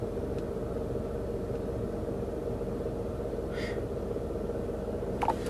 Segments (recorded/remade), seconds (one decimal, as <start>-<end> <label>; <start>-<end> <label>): 0.0-5.5 recorded